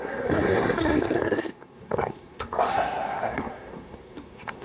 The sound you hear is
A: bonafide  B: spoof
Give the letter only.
B